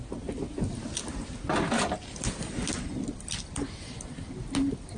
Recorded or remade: recorded